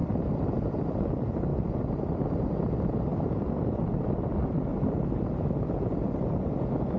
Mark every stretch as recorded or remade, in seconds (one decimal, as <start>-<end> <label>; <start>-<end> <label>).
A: 0.0-0.8 remade; 0.8-1.5 recorded; 1.5-2.2 remade; 2.2-3.1 recorded; 3.1-3.7 remade; 3.7-4.7 recorded; 4.7-5.6 remade; 5.6-7.0 recorded